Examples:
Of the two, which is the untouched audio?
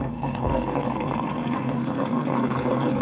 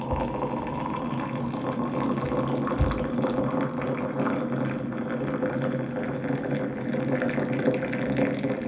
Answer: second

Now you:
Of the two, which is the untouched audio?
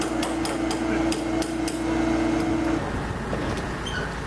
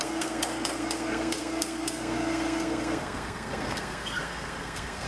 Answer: first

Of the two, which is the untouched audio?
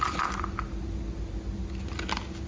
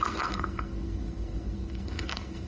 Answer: first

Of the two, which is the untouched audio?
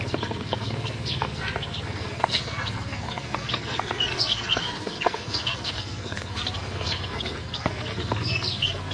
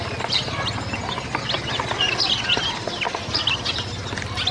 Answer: second